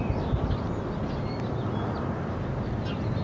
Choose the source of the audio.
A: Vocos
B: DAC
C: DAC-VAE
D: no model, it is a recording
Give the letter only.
D